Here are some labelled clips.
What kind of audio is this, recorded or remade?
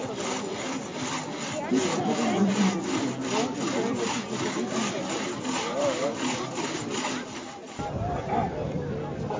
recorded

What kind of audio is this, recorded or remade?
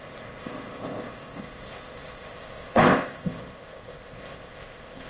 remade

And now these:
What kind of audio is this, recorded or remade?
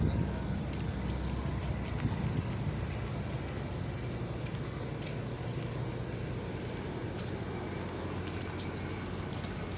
recorded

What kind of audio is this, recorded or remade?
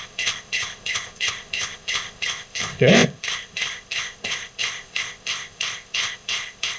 remade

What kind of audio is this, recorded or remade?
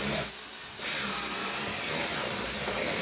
recorded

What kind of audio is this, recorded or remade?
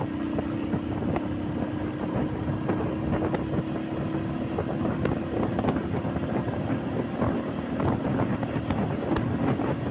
recorded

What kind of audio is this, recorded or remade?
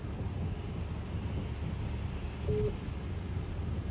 recorded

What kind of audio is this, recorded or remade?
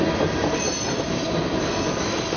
recorded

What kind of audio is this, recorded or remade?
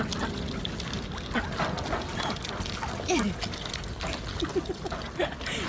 recorded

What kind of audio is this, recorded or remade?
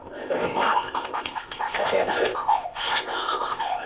remade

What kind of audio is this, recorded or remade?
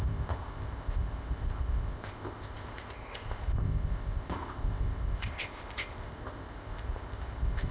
remade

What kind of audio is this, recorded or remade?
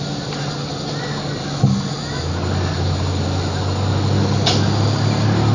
recorded